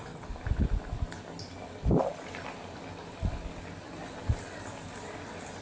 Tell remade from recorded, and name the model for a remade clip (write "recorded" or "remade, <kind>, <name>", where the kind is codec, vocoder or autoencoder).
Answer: recorded